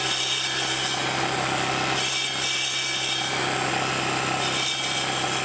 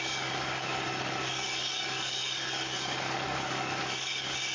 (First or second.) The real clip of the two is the first